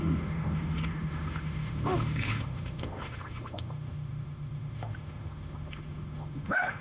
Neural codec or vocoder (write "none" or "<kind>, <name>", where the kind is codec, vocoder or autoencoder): autoencoder, DAC-VAE